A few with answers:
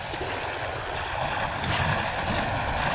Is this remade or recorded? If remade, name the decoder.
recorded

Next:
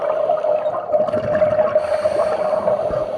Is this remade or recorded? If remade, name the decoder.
recorded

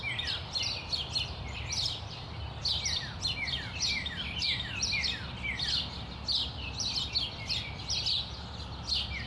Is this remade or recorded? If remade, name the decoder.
recorded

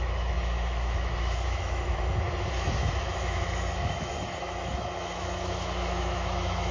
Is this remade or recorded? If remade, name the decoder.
remade, autoencoder, DAC-VAE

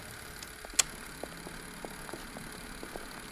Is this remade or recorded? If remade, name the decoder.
recorded